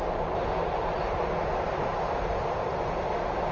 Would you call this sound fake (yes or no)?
no